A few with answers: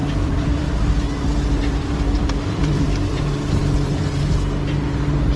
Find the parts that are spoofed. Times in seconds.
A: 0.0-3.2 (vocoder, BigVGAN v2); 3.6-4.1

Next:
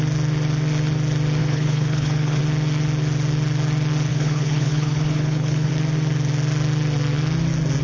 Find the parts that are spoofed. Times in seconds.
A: 1.4-2.4 (codec, HILCodec); 4.1-5.7

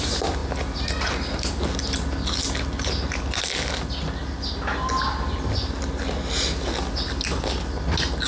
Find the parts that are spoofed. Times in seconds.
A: none

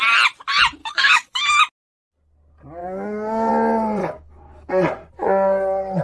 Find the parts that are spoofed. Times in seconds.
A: 0.8-1.6 (codec, DAC); 2.8-3.5; 4.0-4.7